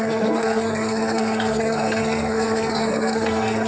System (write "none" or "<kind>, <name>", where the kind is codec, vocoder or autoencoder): codec, SNAC